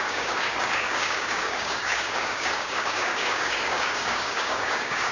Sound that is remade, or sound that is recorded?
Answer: remade